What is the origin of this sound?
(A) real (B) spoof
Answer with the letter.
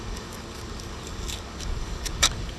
B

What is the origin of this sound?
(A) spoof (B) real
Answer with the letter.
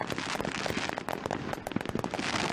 B